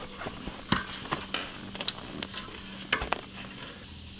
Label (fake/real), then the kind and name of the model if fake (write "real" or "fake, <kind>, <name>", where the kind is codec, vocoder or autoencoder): real